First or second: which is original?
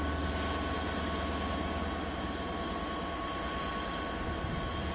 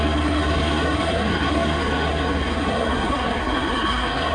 first